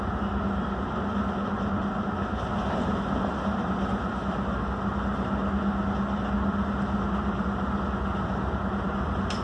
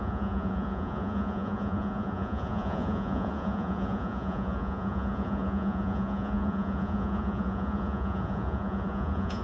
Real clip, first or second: first